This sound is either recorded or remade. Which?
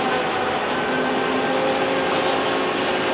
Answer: recorded